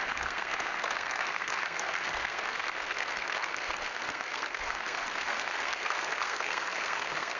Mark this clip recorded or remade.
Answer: remade